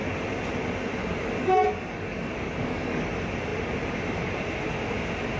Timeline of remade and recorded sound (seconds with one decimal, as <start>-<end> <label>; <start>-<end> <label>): 0.0-1.0 recorded; 1.0-3.0 remade; 3.0-5.4 recorded